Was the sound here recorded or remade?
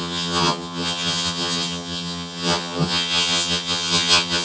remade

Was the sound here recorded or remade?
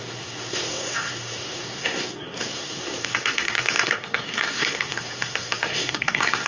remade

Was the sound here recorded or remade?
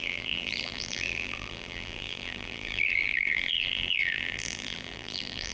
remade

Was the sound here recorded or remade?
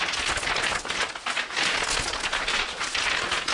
recorded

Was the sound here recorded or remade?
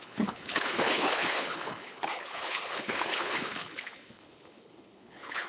remade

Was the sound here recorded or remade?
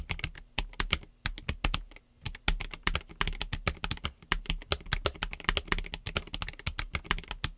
recorded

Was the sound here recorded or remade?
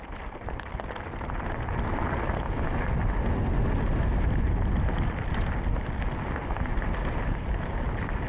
recorded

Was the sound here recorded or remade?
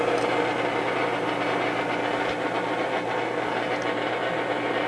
recorded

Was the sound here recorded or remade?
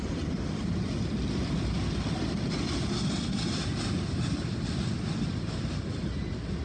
recorded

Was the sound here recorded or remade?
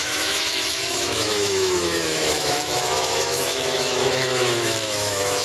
remade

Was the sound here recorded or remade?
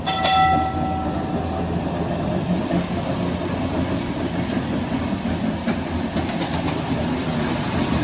recorded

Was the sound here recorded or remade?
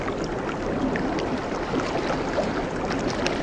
recorded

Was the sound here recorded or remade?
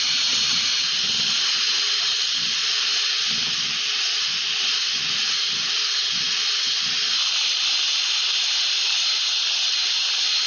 remade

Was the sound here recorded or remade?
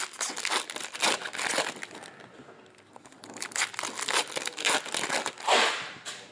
recorded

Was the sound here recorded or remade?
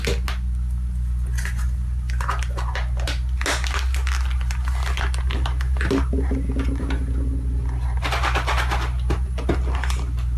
recorded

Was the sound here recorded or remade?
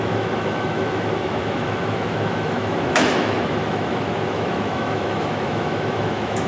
remade